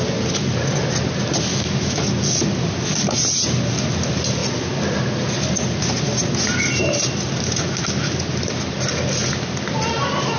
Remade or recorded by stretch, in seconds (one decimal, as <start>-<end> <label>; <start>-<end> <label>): 0.0-1.5 recorded; 1.5-2.0 remade; 2.0-10.4 recorded